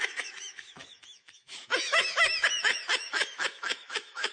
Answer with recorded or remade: remade